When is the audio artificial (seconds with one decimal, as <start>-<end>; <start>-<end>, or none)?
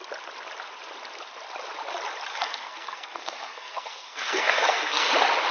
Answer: 2.3-5.1